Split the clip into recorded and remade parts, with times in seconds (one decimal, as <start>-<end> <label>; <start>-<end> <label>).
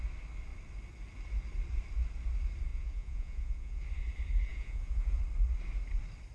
0.0-2.7 recorded; 2.7-3.8 remade; 3.8-4.5 recorded; 4.5-5.2 remade; 5.2-6.3 recorded